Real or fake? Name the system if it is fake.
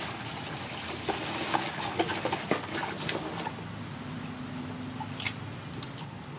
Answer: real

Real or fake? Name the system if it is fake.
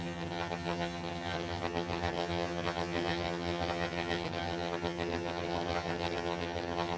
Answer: fake, vocoder, HiFi-GAN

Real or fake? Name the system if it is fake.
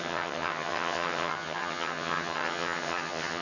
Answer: fake, vocoder, HiFi-GAN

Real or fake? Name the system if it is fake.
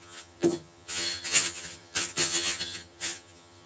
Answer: fake, vocoder, HiFi-GAN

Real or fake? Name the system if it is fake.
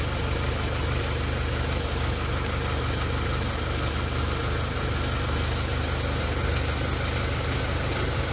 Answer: real